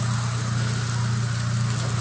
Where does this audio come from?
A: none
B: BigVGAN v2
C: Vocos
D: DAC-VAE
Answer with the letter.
A